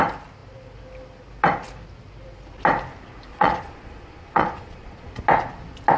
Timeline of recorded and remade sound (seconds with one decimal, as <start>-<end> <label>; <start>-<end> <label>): 0.0-3.3 recorded; 3.3-5.1 remade; 5.1-6.0 recorded